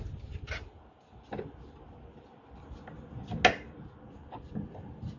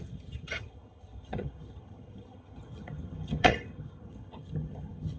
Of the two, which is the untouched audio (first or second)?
first